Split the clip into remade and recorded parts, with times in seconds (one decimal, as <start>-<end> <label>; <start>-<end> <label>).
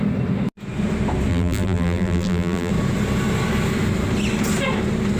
0.0-1.3 recorded; 1.3-2.7 remade; 2.7-5.2 recorded